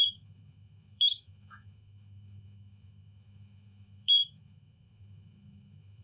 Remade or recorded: remade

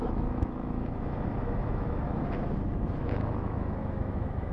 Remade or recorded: remade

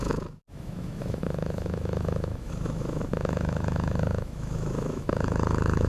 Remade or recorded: remade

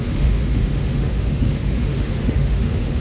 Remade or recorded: remade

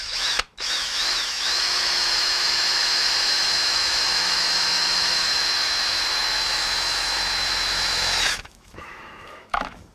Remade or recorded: remade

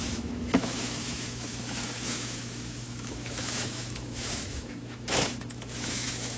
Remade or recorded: remade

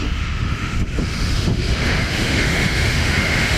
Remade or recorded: remade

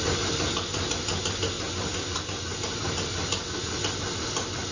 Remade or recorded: recorded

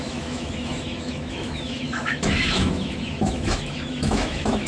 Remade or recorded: remade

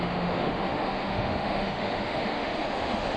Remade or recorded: remade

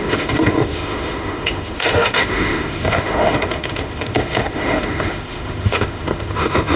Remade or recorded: remade